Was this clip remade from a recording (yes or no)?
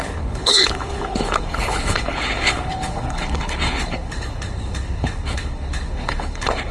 yes